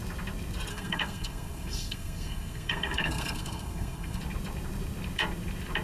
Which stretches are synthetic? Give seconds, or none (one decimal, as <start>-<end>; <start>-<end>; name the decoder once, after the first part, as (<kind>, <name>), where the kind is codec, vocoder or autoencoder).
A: 0.7-4.2 (codec, SNAC)